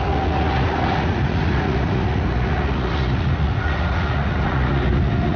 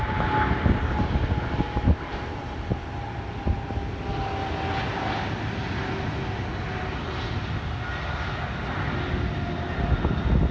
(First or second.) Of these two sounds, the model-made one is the first